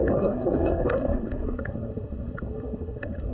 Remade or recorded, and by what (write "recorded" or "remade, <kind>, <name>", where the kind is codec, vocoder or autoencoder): remade, codec, SNAC